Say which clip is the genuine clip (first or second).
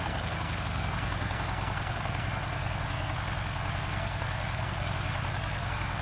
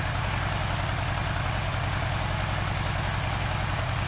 second